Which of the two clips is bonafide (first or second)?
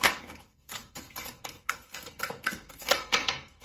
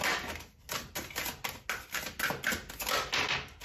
second